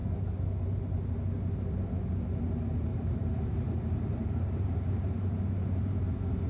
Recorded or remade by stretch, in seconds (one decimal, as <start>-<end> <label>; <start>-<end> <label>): 0.0-2.9 recorded; 2.9-6.0 remade; 6.0-6.5 recorded